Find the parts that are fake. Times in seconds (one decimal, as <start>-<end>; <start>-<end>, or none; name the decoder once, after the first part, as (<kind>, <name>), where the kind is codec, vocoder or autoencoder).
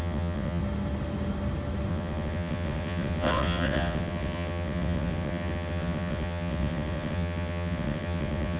0.0-0.6 (vocoder, WaveNeXt); 1.9-8.6